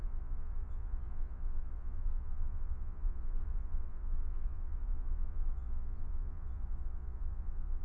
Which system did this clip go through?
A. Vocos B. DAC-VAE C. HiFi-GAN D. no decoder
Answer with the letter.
A